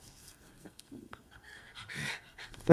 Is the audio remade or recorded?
remade